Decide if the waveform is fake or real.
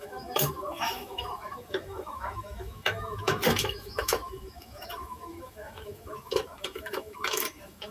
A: fake